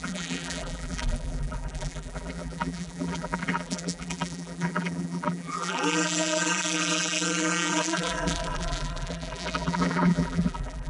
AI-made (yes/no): yes